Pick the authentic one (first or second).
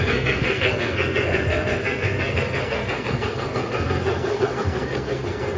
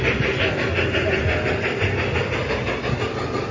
second